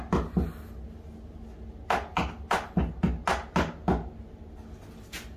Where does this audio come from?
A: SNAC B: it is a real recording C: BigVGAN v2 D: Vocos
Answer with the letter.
B